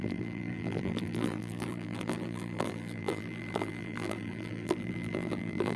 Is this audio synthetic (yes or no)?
yes